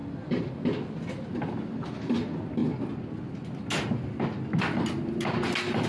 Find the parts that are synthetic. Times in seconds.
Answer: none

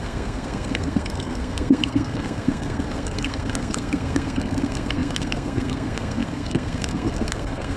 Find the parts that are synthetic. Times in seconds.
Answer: 0.0-7.8 (codec, SNAC)

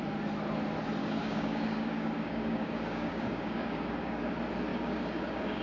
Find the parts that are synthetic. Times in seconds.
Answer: 1.0-4.3 (codec, DAC); 4.7-5.6